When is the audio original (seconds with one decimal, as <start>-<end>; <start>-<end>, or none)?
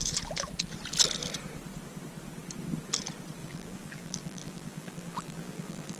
0.0-3.4